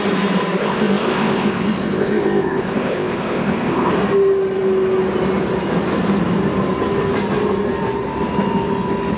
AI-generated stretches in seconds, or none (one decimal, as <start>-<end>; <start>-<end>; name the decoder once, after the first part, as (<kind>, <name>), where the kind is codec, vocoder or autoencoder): 0.6-3.9 (codec, ZipCodec)